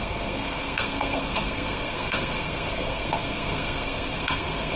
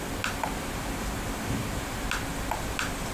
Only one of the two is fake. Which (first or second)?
first